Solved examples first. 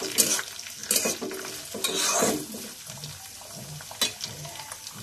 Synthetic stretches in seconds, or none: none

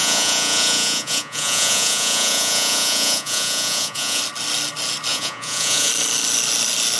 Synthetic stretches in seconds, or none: 0.0-4.2 (vocoder, Vocos); 5.1-5.9

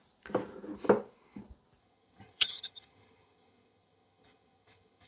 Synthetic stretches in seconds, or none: 1.8-5.1 (vocoder, HiFi-GAN)

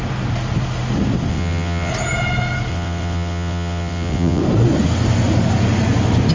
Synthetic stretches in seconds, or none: 1.3-1.9 (vocoder, WaveNeXt); 2.7-4.4

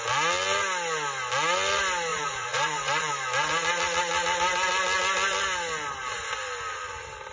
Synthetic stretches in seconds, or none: 2.1-3.1 (vocoder, Vocos)

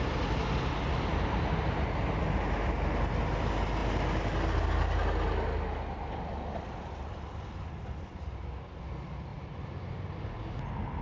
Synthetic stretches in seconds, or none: 9.3-10.1 (vocoder, BigVGAN v2)